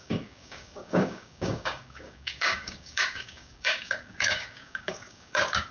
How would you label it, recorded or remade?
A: remade